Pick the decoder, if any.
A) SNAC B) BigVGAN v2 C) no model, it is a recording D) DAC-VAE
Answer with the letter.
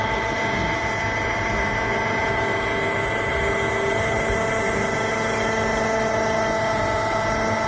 C